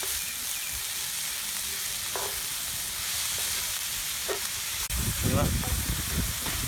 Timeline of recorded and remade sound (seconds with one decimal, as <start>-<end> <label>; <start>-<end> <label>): 0.0-4.2 recorded; 4.2-6.7 remade